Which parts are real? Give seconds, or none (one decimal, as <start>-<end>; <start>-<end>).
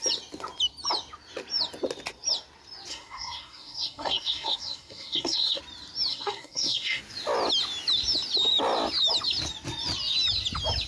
0.0-2.9; 5.6-6.1; 7.0-10.9